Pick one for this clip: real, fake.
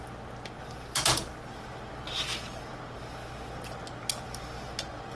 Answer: real